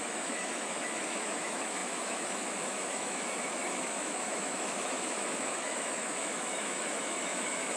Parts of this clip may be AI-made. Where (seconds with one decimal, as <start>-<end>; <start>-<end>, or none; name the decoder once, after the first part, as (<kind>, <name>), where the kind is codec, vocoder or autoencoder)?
0.0-7.8 (autoencoder, DAC-VAE)